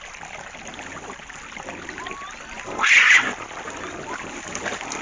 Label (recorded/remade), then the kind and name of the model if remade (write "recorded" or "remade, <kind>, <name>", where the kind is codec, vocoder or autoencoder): recorded